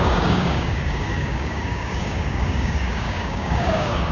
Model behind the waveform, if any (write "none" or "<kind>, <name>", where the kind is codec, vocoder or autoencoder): codec, DAC